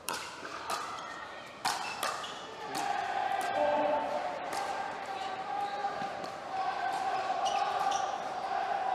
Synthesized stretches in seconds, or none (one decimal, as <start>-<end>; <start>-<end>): 0.0-1.6; 2.6-8.9